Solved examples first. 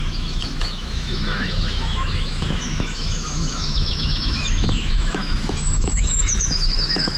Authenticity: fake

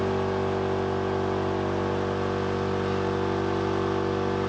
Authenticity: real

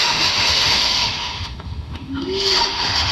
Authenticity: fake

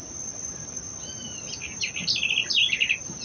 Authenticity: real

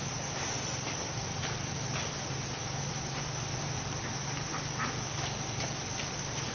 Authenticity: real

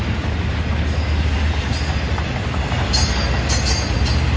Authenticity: real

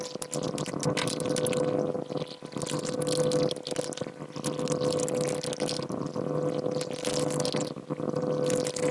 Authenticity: real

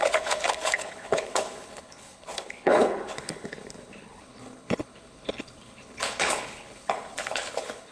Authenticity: fake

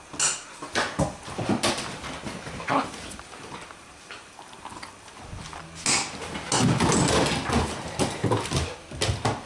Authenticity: real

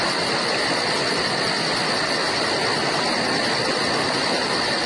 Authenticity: real